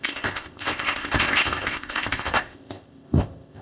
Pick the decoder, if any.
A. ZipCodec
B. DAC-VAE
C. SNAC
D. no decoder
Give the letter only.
A